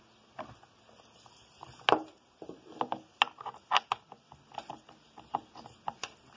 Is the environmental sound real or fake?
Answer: real